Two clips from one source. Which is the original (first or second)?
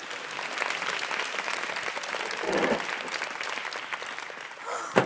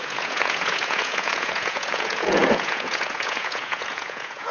first